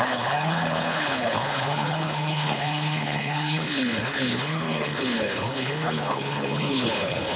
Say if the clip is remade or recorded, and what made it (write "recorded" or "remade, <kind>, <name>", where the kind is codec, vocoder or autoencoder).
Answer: remade, codec, HILCodec